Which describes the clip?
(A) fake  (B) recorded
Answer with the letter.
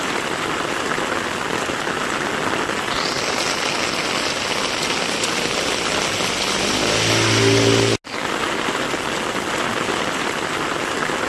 B